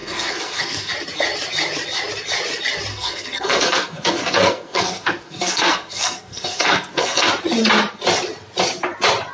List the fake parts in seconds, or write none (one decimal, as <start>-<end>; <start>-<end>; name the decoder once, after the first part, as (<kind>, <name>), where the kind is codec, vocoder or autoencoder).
0.0-0.9 (codec, SNAC); 2.9-7.3